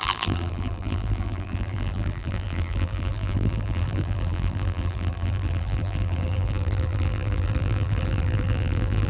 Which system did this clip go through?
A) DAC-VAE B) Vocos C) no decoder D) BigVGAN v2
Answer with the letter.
D